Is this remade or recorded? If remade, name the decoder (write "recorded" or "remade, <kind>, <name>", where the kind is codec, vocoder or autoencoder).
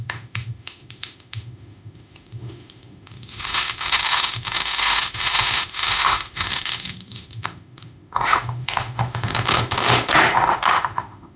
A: remade, autoencoder, DAC-VAE